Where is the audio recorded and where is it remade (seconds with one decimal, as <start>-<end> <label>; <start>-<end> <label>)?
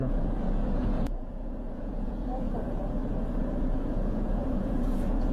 0.0-3.0 remade; 3.0-3.6 recorded; 3.6-5.3 remade